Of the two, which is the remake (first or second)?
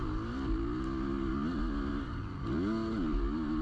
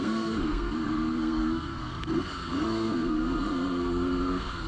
second